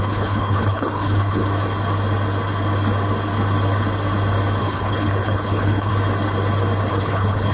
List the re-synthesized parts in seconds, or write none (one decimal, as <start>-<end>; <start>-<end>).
0.0-1.4; 4.6-5.9; 6.9-7.5

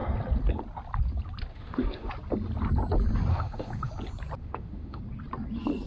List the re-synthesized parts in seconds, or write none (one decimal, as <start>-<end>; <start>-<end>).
1.5-2.1; 3.3-3.9; 4.4-5.0

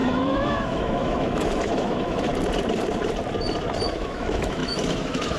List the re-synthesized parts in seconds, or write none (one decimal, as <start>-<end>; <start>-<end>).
0.0-2.3; 3.9-5.4

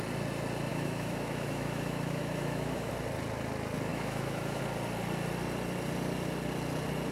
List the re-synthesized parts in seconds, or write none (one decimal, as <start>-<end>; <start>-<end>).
0.7-2.9; 3.9-4.6

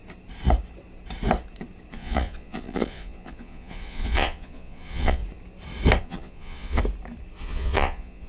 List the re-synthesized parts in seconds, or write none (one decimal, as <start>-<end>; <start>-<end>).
1.9-5.2; 6.0-6.8; 7.4-8.3

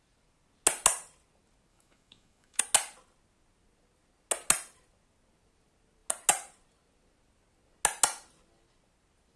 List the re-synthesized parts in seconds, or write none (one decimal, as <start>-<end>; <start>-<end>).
1.7-2.6